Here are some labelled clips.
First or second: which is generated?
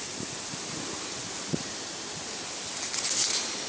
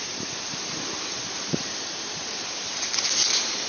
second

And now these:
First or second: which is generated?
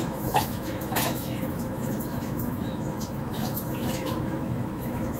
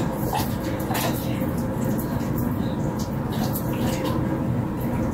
first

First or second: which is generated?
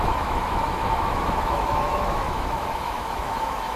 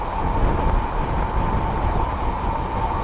first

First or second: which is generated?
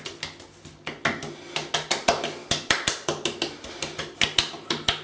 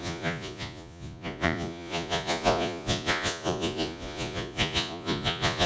second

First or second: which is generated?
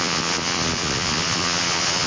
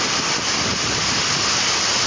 first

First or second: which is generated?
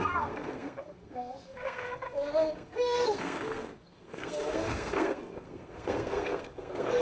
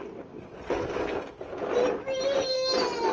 first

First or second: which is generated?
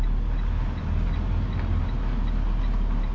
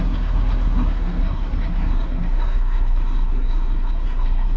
second